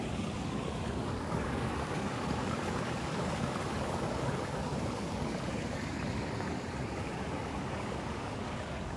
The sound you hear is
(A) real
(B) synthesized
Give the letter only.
B